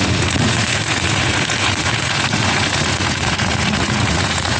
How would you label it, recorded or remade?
remade